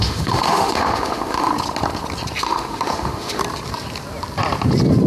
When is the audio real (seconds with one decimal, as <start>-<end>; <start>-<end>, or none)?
1.5-2.4; 3.4-5.1